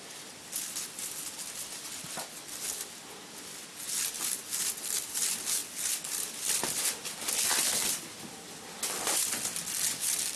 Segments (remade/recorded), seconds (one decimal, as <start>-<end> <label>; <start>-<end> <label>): 0.0-10.4 recorded